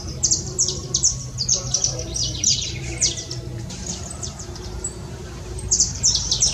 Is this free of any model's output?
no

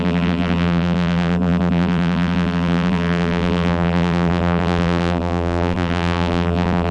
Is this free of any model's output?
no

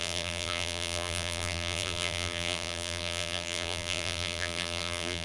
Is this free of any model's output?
no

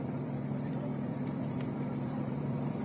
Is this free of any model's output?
no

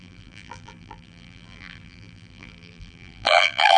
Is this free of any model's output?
no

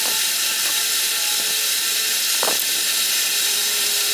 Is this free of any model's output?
yes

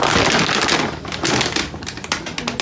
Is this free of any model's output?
yes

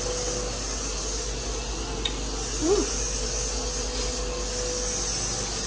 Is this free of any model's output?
yes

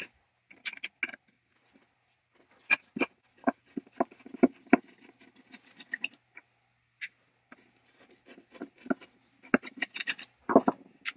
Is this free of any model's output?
yes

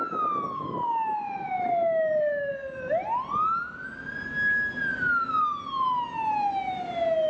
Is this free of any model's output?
yes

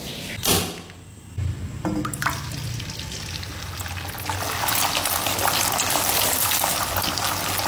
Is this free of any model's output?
yes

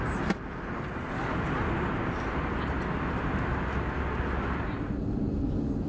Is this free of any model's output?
yes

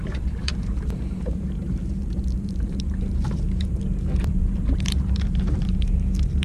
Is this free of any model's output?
no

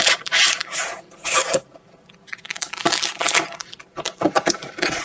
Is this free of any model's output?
no